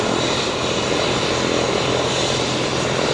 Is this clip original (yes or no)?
yes